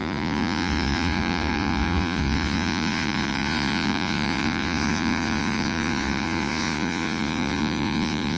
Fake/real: fake